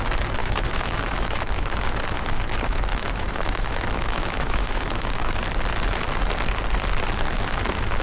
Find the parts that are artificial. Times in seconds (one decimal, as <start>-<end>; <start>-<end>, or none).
0.4-2.3; 2.9-5.3